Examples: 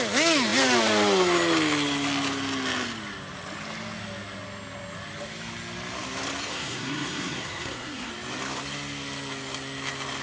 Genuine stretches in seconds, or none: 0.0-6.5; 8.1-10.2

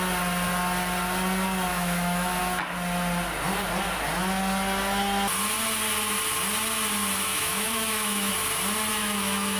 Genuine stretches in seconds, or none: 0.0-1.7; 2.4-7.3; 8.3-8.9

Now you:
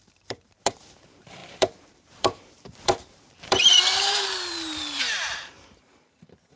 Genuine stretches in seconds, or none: none

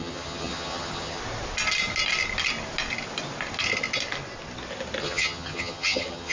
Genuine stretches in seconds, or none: 1.2-5.0

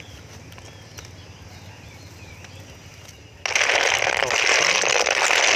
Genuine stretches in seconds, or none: 0.0-5.6

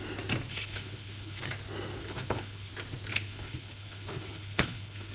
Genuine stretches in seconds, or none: 0.0-0.5; 1.4-2.0; 2.7-3.1